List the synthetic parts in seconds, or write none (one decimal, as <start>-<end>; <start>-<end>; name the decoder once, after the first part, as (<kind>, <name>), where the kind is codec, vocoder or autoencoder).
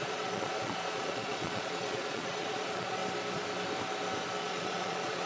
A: 0.0-3.0 (vocoder, Vocos); 4.4-5.3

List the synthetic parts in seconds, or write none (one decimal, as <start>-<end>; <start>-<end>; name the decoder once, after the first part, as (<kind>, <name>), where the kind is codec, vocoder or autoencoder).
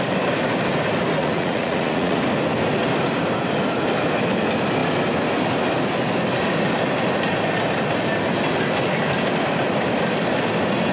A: 1.2-2.2 (vocoder, Vocos)